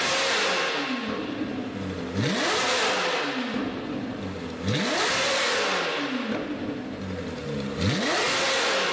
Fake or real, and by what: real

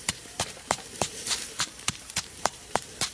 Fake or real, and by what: fake, vocoder, BigVGAN v2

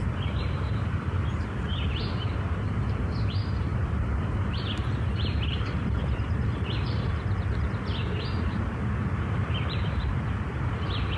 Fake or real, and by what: fake, vocoder, BigVGAN v2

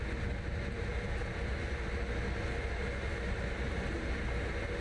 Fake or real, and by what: real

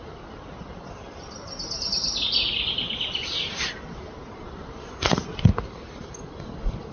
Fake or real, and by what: real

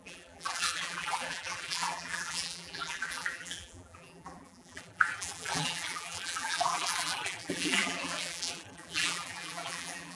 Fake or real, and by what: fake, vocoder, BigVGAN v2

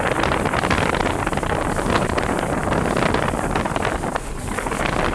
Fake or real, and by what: real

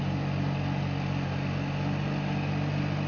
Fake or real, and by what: real